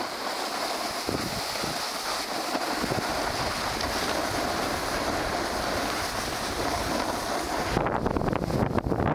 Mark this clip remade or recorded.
recorded